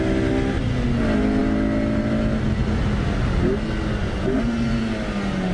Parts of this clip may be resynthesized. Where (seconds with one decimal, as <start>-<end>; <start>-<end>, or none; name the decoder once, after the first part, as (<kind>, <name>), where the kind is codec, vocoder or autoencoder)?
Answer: none